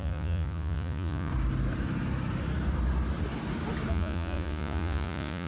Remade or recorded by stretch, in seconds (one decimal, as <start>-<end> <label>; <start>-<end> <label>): 0.0-1.3 remade; 1.3-3.9 recorded; 3.9-5.5 remade